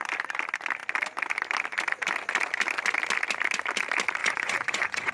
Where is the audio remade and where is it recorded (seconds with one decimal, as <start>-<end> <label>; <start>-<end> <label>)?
0.0-4.2 recorded; 4.2-5.1 remade